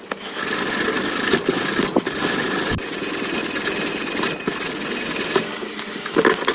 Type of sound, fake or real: real